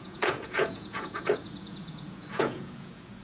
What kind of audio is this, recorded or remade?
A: remade